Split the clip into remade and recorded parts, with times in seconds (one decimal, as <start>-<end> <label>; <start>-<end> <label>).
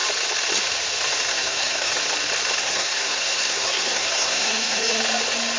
0.0-1.3 recorded; 1.3-1.9 remade; 1.9-2.6 recorded; 2.6-5.0 remade; 5.0-5.6 recorded